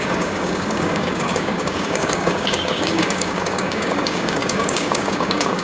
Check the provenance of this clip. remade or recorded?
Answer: remade